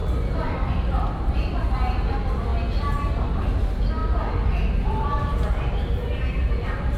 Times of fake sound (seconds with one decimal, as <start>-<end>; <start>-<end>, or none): 2.1-2.5; 3.6-4.0; 6.6-7.0